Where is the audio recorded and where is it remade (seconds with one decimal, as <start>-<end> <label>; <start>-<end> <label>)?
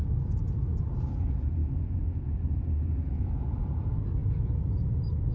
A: 0.0-5.3 remade